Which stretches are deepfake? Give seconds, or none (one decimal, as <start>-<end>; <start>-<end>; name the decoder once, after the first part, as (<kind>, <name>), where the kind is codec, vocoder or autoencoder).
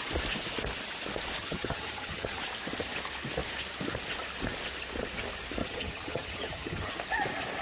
1.4-2.4 (vocoder, HiFi-GAN); 5.6-6.9